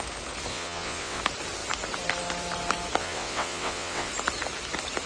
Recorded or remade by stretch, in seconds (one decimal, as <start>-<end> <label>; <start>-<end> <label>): 0.0-0.5 recorded; 0.5-1.2 remade; 1.2-3.0 recorded; 3.0-4.1 remade; 4.1-5.1 recorded